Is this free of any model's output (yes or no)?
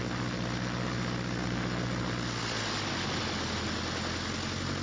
yes